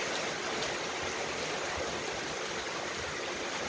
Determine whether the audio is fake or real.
real